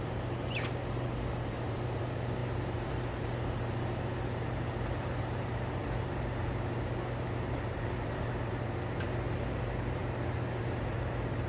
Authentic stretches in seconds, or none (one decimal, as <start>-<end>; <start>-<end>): 10.0-10.6